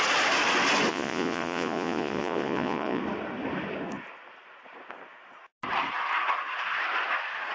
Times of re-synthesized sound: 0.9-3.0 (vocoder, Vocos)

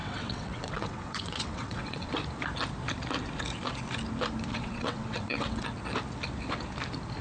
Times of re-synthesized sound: 0.0-2.1 (vocoder, WaveNeXt); 4.5-5.6

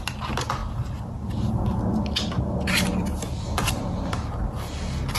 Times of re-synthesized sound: none

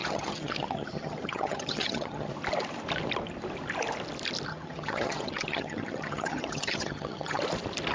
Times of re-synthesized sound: 0.0-2.3 (vocoder, HiFi-GAN); 4.5-7.4

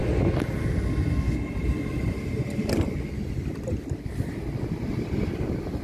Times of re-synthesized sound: 3.5-4.9 (vocoder, BigVGAN v2)